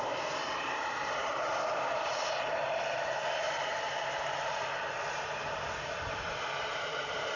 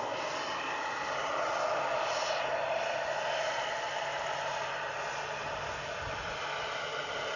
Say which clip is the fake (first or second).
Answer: first